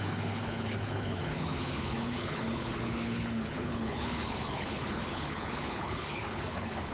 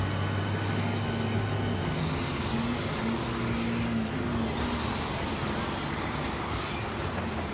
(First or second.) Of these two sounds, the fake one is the first